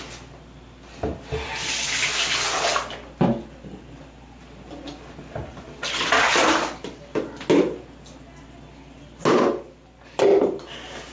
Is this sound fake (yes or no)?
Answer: no